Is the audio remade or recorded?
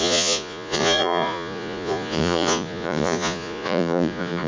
remade